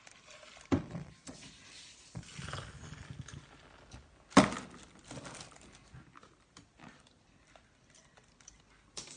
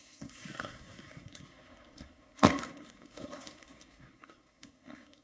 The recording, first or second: first